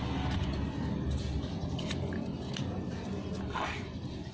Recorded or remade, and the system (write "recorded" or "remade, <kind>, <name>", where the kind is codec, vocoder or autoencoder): recorded